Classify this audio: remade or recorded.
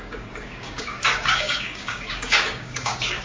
remade